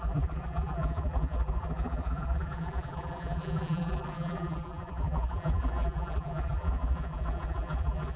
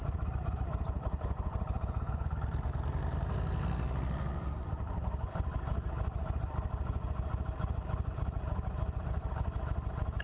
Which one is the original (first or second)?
second